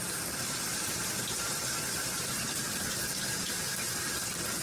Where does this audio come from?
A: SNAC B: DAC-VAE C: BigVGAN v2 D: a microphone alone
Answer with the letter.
D